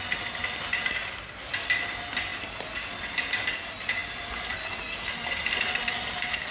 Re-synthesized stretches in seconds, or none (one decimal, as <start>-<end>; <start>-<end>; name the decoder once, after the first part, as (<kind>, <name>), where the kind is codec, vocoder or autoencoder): none